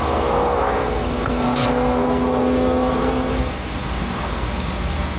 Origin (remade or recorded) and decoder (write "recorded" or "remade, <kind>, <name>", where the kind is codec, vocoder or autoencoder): remade, codec, SNAC